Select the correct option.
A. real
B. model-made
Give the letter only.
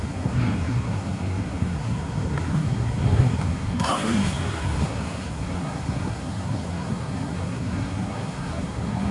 B